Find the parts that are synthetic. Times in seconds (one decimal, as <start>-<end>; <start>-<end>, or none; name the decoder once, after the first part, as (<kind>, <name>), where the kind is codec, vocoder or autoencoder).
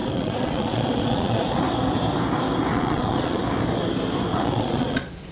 0.0-1.6 (vocoder, Vocos); 2.7-3.4; 4.3-5.3